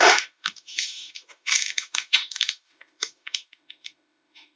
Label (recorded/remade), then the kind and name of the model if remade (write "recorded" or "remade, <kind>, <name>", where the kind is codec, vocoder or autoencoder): remade, autoencoder, DAC-VAE